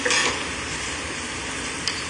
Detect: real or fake real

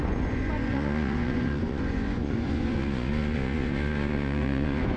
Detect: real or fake fake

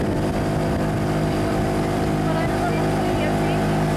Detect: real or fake real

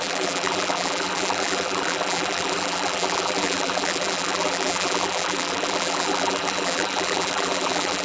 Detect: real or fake fake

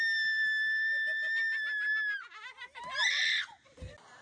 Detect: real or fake real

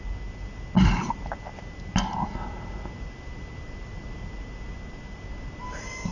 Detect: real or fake real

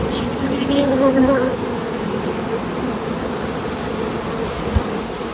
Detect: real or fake real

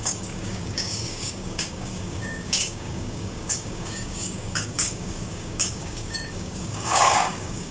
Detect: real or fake fake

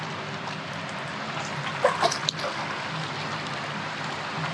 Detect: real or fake real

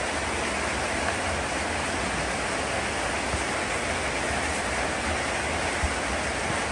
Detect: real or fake real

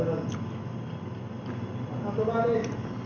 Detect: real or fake real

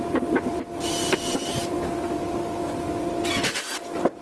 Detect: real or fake real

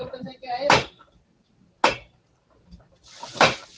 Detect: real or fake real